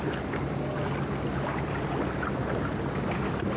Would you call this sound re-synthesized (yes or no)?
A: no